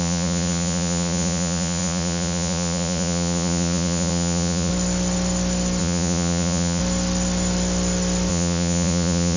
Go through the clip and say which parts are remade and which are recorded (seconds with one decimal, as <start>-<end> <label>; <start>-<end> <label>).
0.0-4.7 remade; 4.7-5.8 recorded; 5.8-6.8 remade; 6.8-8.3 recorded; 8.3-9.4 remade

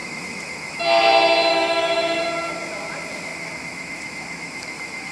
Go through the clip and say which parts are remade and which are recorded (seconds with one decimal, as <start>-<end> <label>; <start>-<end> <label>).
0.0-0.8 remade; 0.8-1.5 recorded; 1.5-2.2 remade; 2.2-3.3 recorded; 3.3-5.1 remade

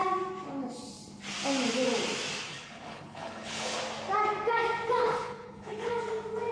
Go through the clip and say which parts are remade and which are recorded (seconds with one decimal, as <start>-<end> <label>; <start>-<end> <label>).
0.0-2.5 recorded; 2.5-3.8 remade; 3.8-5.0 recorded; 5.0-5.9 remade; 5.9-6.5 recorded